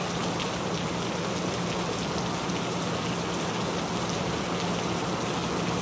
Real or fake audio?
real